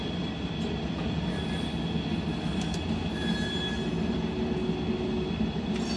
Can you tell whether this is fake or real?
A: real